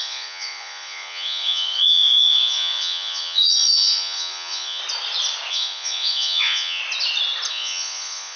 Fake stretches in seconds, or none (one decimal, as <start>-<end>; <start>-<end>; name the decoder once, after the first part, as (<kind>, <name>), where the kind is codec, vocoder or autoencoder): 0.0-4.8 (vocoder, Vocos); 5.5-6.8; 7.5-8.4